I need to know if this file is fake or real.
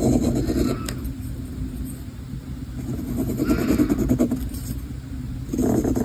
real